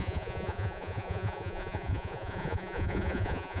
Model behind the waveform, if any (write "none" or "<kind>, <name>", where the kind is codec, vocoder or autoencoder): vocoder, Vocos